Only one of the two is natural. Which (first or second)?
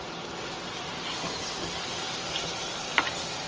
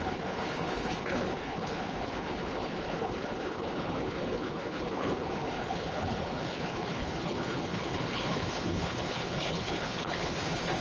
first